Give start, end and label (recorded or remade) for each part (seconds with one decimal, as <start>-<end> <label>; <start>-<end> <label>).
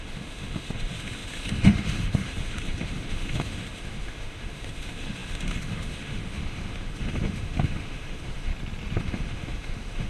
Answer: 0.0-8.5 remade; 8.5-9.0 recorded; 9.0-10.1 remade